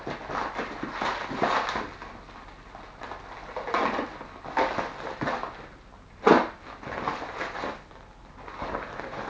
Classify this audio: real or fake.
real